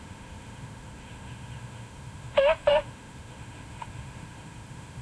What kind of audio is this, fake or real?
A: fake